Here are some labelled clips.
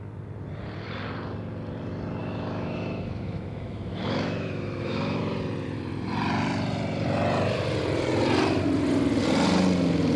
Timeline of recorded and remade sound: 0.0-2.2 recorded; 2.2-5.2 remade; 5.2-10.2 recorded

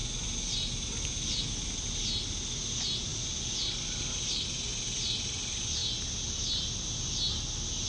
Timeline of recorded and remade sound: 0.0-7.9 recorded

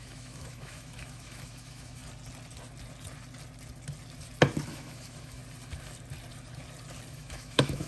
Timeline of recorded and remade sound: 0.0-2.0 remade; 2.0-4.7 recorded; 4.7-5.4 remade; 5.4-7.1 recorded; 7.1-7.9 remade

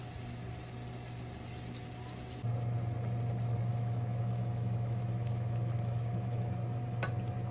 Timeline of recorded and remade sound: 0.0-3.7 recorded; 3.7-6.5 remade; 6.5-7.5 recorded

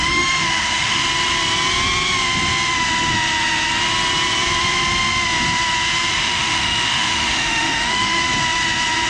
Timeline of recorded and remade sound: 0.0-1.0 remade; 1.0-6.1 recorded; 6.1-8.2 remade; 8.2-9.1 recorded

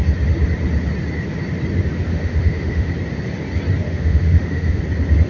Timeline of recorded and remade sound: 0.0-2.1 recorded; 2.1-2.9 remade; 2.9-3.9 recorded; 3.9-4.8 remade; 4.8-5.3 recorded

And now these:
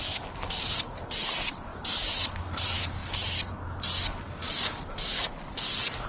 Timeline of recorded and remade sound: 0.0-6.1 recorded

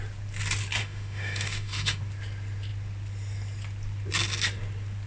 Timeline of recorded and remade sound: 0.0-0.8 recorded; 0.8-2.0 remade; 2.0-5.1 recorded